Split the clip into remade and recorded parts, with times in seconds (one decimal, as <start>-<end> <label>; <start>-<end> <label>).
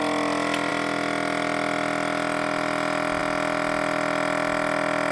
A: 0.0-5.1 recorded